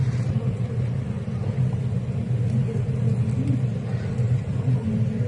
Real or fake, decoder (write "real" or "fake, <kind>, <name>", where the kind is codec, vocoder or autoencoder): real